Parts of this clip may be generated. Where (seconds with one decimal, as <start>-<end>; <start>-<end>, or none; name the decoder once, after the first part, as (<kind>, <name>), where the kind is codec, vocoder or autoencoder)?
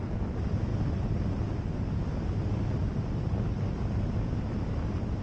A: none